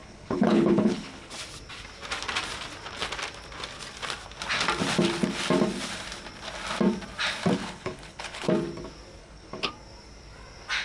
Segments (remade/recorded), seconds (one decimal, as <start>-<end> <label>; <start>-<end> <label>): 0.0-1.3 remade; 1.3-7.6 recorded; 7.6-8.5 remade; 8.5-9.2 recorded; 9.2-9.7 remade; 9.7-10.8 recorded